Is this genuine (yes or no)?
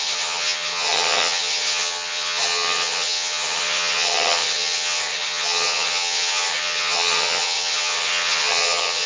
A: no